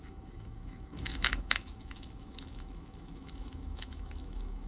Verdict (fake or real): fake